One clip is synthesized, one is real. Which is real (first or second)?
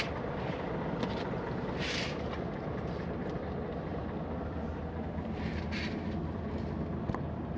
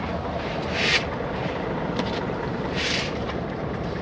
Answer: first